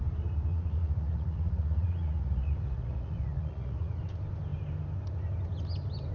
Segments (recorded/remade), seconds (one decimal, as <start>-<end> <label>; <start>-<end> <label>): 0.0-0.5 recorded; 0.5-4.0 remade; 4.0-6.1 recorded